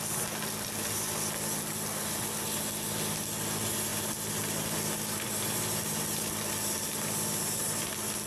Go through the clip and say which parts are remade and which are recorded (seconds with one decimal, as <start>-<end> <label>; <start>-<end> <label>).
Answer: 0.0-8.3 recorded